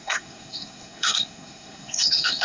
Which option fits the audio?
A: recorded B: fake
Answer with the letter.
B